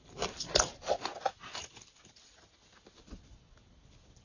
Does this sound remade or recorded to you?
recorded